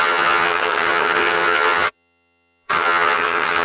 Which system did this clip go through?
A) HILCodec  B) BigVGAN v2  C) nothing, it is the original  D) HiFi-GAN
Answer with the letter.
D